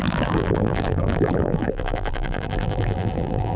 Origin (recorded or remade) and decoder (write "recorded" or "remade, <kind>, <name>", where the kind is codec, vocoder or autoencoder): remade, vocoder, BigVGAN v2